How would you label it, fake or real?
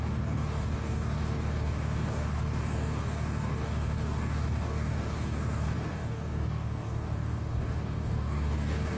fake